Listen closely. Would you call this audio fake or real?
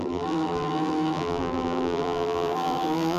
fake